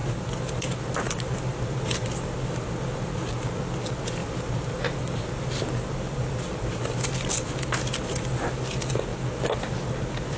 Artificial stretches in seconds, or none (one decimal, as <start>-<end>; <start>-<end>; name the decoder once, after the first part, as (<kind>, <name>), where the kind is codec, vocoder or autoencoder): 0.0-3.6 (vocoder, BigVGAN v2); 4.2-7.5